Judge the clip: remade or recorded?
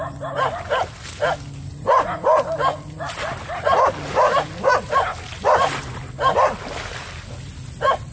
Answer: recorded